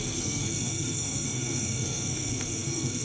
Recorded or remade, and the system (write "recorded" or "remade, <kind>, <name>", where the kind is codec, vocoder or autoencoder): remade, codec, SNAC